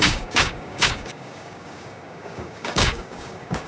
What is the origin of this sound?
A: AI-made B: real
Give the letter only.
A